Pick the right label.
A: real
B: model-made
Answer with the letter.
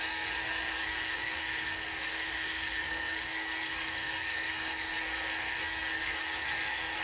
B